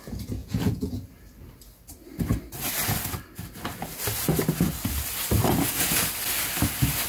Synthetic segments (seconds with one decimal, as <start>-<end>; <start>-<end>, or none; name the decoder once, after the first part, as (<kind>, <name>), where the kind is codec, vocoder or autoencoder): 0.4-1.0 (vocoder, Vocos)